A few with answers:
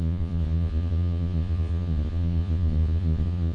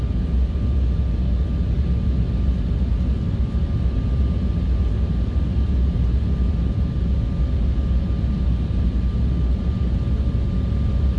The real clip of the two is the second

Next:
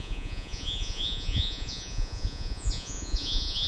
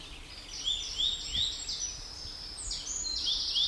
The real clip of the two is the second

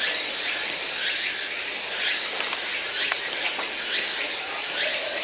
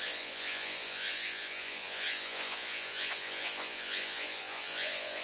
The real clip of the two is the first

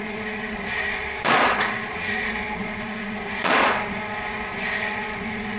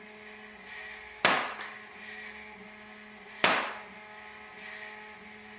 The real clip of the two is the second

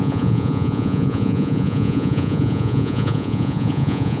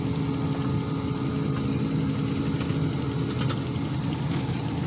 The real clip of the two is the second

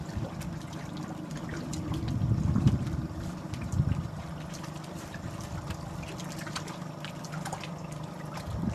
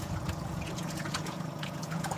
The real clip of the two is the first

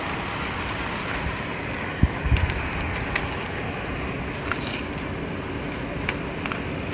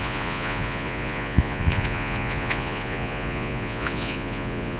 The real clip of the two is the first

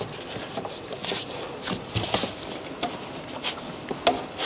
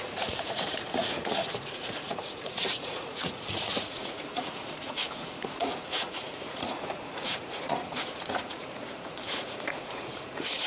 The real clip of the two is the first